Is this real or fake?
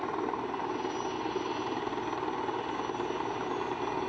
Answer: real